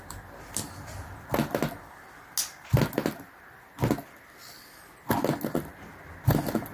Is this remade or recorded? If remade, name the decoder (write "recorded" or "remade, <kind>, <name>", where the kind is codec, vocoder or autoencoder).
recorded